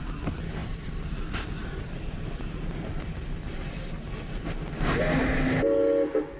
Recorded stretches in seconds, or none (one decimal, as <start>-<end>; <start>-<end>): 0.0-0.6; 3.8-6.4